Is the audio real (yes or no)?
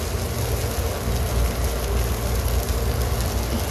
yes